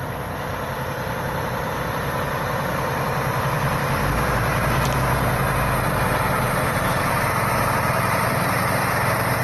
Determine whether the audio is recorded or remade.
remade